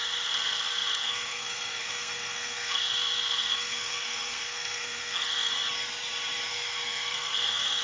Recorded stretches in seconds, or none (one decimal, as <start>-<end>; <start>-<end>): 5.5-6.5